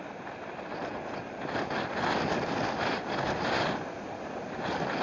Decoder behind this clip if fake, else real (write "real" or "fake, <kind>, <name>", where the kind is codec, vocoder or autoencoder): real